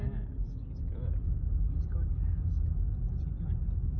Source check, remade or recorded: recorded